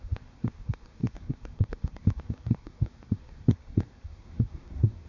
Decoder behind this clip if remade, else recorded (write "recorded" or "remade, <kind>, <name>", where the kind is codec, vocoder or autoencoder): remade, codec, SNAC